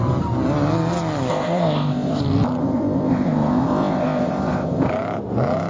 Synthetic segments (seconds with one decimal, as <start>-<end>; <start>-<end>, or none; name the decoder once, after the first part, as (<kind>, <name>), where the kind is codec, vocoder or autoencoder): 1.3-2.2 (codec, ZipCodec); 2.6-4.9